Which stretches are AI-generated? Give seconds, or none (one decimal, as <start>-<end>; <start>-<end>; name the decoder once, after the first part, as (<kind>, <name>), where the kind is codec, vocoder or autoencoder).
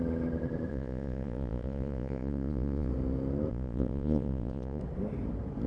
0.7-2.9 (vocoder, Vocos); 3.5-4.8